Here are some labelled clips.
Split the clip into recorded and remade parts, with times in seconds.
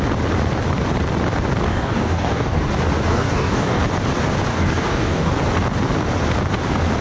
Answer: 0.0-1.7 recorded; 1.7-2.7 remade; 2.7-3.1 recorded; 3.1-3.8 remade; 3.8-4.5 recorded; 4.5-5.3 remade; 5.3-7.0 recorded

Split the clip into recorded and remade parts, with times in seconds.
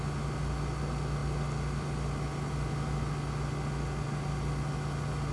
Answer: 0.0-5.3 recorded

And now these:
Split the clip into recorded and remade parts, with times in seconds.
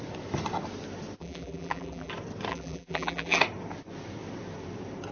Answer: 0.0-1.2 recorded; 1.2-2.1 remade; 2.1-2.5 recorded; 2.5-3.4 remade; 3.4-5.1 recorded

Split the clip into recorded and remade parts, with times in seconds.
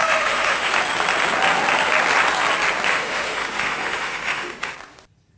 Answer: 0.0-0.7 remade; 0.7-2.9 recorded; 2.9-4.7 remade; 4.7-5.4 recorded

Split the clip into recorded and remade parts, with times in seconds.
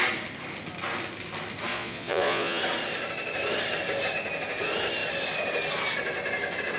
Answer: 0.0-1.7 recorded; 1.7-2.6 remade; 2.6-6.8 recorded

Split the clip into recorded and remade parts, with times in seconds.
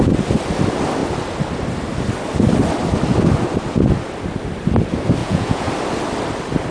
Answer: 0.0-5.2 recorded; 5.2-5.7 remade; 5.7-6.7 recorded